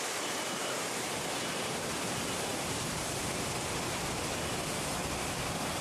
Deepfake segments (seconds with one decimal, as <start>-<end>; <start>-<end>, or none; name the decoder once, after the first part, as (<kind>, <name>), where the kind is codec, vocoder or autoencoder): 2.5-3.3 (vocoder, BigVGAN v2)